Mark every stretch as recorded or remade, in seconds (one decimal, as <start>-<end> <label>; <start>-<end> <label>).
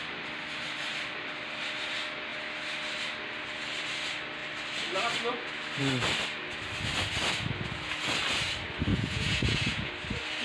0.0-8.9 recorded; 8.9-9.9 remade; 9.9-10.4 recorded